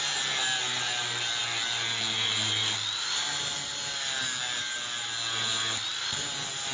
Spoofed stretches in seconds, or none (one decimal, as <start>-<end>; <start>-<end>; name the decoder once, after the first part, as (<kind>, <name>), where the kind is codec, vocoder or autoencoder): none